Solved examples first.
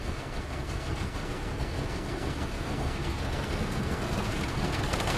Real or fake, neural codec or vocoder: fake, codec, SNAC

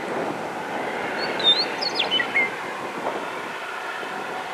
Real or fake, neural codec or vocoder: real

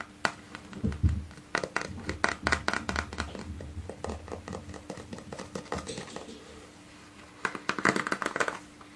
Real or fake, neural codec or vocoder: real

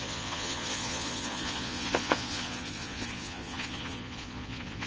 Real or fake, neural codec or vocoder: fake, vocoder, Vocos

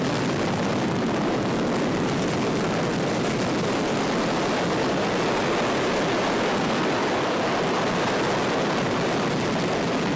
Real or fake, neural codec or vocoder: real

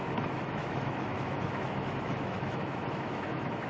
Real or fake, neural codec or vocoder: fake, autoencoder, DAC-VAE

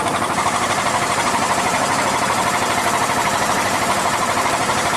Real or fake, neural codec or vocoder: fake, vocoder, BigVGAN v2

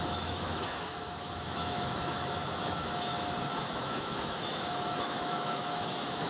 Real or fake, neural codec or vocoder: fake, autoencoder, DAC-VAE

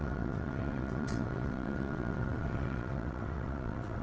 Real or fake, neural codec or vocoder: fake, vocoder, WaveNeXt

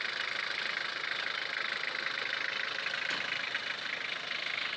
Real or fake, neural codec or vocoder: real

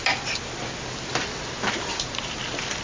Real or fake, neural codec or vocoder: real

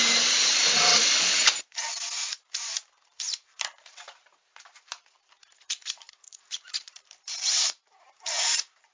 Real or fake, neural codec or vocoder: fake, vocoder, BigVGAN v2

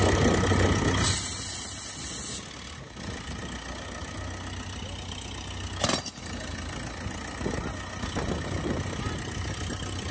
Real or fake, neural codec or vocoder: real